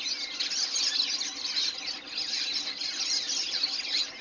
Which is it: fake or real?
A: real